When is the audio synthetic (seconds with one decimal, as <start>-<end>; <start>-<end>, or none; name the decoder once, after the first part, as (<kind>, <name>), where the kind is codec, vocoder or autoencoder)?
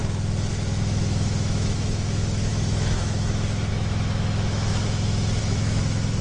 0.5-6.2 (autoencoder, DAC-VAE)